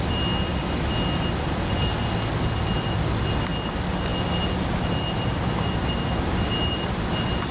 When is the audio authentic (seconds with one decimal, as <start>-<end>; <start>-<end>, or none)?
0.0-7.5